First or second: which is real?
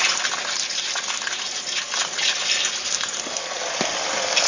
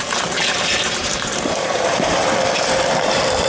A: first